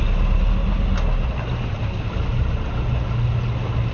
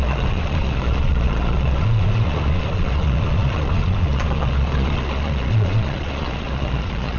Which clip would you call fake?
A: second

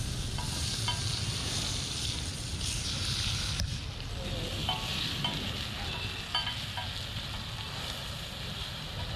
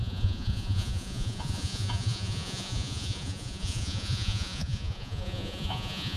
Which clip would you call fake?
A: second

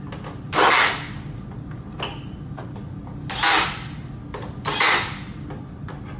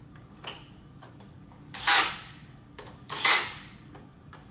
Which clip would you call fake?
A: second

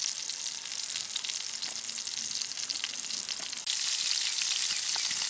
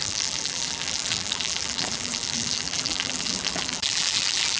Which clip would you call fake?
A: second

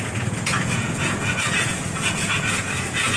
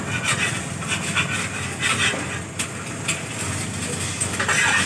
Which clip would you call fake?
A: first